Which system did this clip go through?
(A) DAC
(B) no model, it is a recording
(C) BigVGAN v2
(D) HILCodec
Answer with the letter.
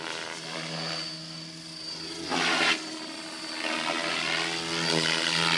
B